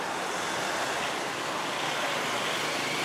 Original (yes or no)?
yes